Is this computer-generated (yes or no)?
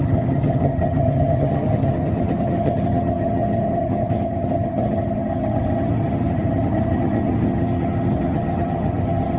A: yes